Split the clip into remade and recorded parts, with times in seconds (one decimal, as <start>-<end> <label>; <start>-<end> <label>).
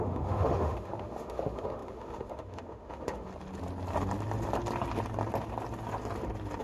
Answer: 0.0-3.3 remade; 3.3-6.6 recorded